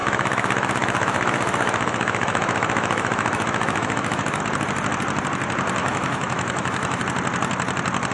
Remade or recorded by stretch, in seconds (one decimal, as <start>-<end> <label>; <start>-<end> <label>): 0.0-4.4 remade; 4.4-5.8 recorded; 5.8-7.0 remade; 7.0-8.1 recorded